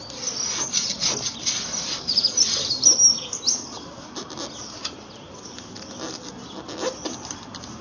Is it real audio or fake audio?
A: real